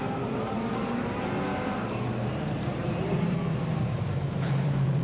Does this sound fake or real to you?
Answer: fake